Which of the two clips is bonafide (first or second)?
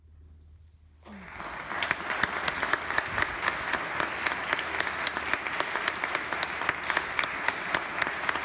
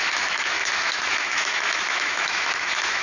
first